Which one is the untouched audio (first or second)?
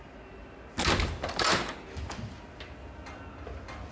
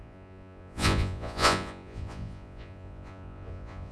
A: first